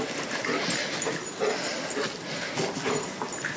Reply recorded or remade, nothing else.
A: recorded